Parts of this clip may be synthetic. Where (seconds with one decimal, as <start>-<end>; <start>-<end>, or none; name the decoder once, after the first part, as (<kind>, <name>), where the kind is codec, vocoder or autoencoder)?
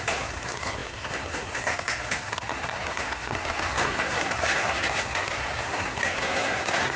0.0-7.0 (codec, SNAC)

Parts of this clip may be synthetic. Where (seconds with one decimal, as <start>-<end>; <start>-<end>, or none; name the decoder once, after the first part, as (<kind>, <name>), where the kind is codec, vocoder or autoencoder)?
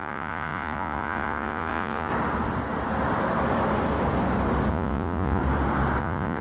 0.0-2.1 (vocoder, Vocos); 4.7-5.4; 6.0-6.4